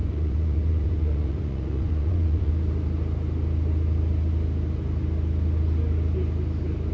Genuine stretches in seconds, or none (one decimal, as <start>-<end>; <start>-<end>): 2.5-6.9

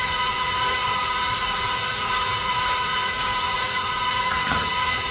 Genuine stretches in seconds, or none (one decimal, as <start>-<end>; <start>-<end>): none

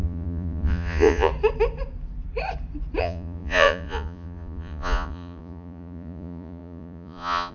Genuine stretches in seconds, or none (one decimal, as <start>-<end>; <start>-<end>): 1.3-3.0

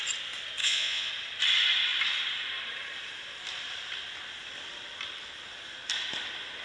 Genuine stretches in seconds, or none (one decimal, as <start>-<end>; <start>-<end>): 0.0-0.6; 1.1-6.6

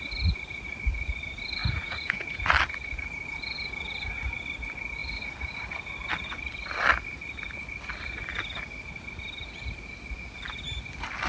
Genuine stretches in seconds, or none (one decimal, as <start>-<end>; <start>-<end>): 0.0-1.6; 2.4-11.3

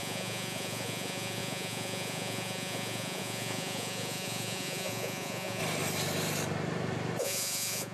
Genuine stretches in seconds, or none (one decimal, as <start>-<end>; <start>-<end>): 5.6-7.2